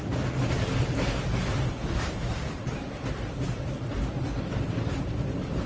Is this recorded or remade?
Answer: recorded